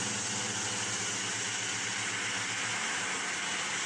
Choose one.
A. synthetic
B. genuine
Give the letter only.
B